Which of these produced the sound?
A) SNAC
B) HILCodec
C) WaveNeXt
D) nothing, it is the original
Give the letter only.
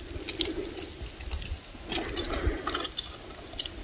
D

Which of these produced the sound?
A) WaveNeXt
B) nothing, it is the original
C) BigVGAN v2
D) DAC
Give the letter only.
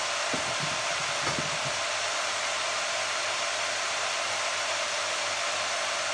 B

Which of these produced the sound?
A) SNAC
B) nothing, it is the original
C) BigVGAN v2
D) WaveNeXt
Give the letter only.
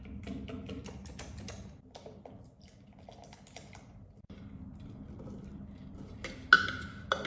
B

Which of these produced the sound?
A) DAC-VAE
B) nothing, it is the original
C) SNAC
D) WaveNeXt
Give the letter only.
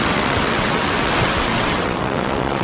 D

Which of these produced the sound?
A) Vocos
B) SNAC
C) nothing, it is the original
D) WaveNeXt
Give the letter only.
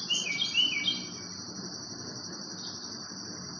C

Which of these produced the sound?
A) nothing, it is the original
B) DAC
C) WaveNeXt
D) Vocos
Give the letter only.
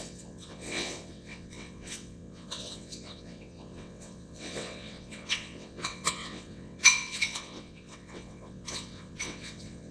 C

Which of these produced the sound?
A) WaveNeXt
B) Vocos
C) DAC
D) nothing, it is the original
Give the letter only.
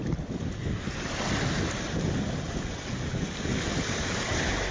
D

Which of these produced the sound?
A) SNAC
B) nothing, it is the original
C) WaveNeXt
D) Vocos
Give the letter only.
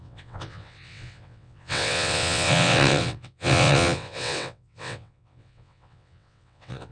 C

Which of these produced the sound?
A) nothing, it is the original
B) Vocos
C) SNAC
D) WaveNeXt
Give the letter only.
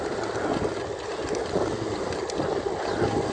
A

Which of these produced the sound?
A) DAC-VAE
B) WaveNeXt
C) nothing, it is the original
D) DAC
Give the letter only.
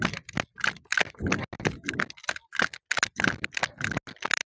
C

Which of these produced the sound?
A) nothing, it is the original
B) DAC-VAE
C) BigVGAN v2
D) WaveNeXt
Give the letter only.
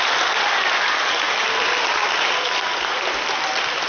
A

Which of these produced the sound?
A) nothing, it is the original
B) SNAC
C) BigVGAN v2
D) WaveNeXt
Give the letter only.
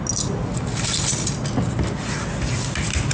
A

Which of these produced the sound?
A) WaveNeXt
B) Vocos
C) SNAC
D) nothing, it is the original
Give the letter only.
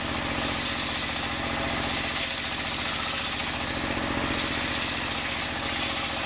D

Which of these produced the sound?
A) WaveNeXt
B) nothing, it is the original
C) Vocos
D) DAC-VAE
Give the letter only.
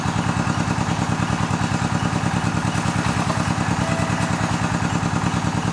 B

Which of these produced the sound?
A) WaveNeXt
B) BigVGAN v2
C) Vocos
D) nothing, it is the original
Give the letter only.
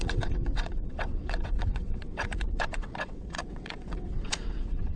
A